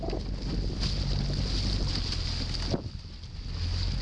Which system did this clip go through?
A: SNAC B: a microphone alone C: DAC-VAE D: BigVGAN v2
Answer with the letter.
B